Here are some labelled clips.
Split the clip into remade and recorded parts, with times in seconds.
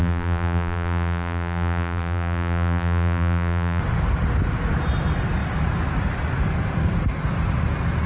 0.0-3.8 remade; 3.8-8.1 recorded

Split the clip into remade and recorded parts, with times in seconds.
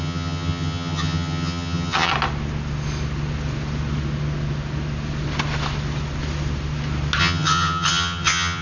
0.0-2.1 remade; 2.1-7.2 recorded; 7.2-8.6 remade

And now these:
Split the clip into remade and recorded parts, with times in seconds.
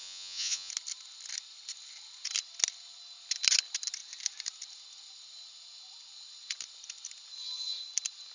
0.0-0.7 remade; 0.7-8.3 recorded